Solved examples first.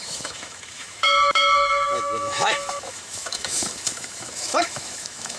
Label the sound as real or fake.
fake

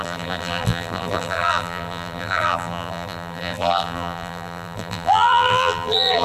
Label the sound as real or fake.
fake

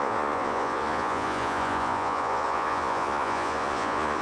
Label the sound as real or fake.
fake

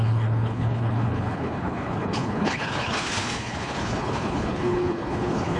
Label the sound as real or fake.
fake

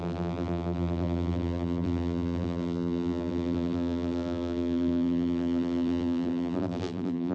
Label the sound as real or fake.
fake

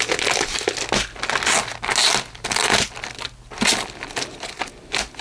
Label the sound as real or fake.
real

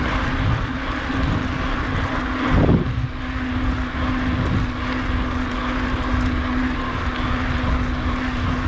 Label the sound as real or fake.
real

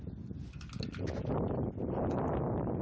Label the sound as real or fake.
real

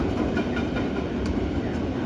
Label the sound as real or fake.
real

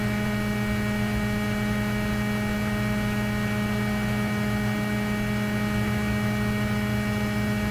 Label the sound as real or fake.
real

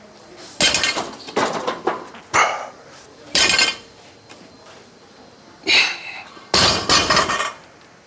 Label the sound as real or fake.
real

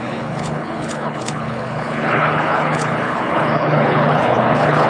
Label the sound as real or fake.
fake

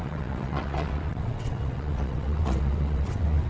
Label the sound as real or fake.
fake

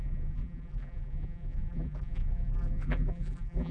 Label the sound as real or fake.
fake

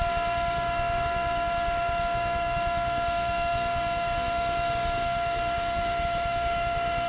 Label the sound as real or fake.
fake